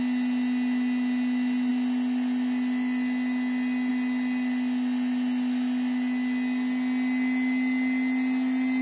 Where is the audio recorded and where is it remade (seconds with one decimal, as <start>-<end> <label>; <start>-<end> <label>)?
0.0-8.8 recorded